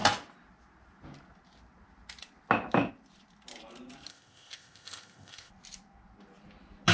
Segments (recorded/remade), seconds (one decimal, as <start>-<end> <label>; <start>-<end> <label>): 0.0-4.1 recorded; 4.1-5.5 remade; 5.5-6.9 recorded

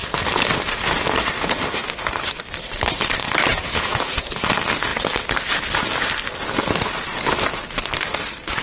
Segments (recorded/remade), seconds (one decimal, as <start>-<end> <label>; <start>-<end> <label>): 0.0-3.5 recorded; 3.5-4.3 remade; 4.3-8.6 recorded

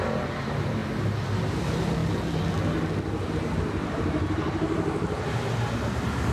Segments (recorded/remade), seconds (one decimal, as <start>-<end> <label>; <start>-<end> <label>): 0.0-0.8 remade; 0.8-1.5 recorded; 1.5-2.0 remade; 2.0-3.3 recorded; 3.3-6.3 remade

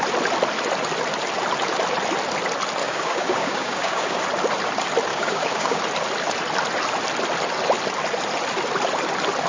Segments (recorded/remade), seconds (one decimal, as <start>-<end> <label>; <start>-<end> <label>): 0.0-2.8 recorded; 2.8-4.2 remade; 4.2-5.1 recorded; 5.1-5.8 remade; 5.8-9.5 recorded

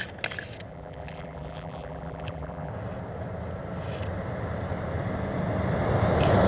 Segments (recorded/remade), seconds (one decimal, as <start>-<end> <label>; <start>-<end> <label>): 0.0-0.7 recorded; 0.7-2.7 remade; 2.7-6.5 recorded

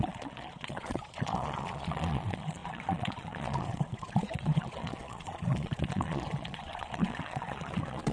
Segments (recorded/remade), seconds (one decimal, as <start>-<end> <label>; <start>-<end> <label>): 0.0-8.1 remade

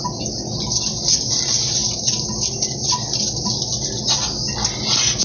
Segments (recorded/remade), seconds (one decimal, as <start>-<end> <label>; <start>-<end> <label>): 0.0-5.2 recorded

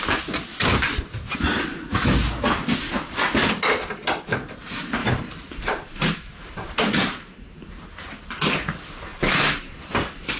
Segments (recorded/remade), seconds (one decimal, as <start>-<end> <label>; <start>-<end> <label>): 0.0-0.5 recorded; 0.5-1.6 remade; 1.6-5.0 recorded; 5.0-8.0 remade; 8.0-9.1 recorded; 9.1-10.4 remade